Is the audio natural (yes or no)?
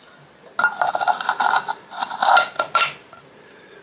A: yes